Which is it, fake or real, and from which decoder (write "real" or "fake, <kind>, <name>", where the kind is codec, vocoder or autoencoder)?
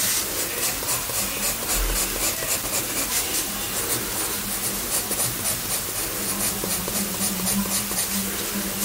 real